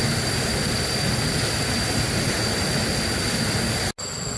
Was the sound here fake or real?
real